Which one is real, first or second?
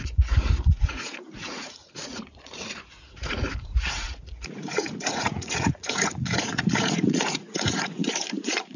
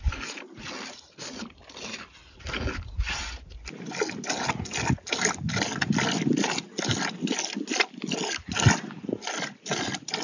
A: second